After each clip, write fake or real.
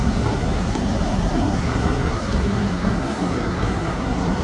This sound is fake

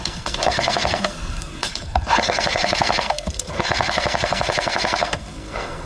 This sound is fake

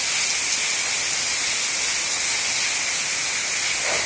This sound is real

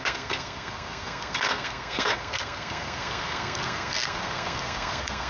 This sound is fake